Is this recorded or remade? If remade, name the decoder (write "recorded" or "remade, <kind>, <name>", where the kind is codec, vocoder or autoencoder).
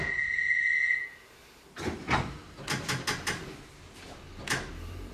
recorded